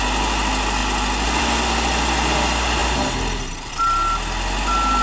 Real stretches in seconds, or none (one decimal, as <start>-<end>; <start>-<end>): 0.0-2.8; 3.7-5.0